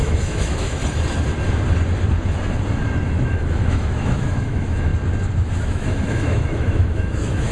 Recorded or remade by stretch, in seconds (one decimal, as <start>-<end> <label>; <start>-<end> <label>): 0.0-0.8 remade; 0.8-3.3 recorded; 3.3-4.9 remade; 4.9-5.6 recorded; 5.6-7.5 remade

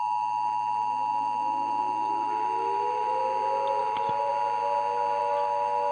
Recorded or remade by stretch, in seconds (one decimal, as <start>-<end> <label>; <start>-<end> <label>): 0.0-3.2 remade; 3.2-3.8 recorded; 3.8-4.3 remade; 4.3-5.2 recorded; 5.2-5.9 remade

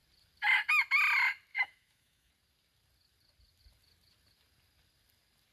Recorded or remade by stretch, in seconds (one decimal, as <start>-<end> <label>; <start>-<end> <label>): 0.0-1.5 recorded; 1.5-2.3 remade; 2.3-5.5 recorded